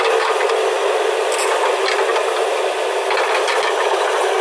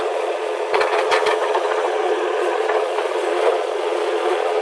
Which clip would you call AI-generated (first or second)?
second